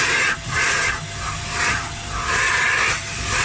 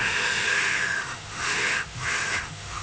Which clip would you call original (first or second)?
first